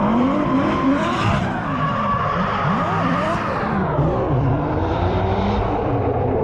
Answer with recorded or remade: remade